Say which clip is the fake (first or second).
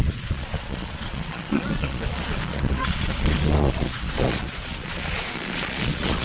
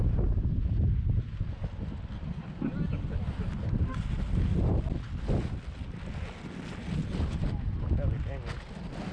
first